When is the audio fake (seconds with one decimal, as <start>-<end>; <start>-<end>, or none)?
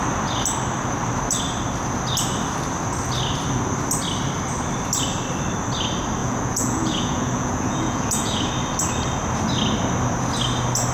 6.2-8.5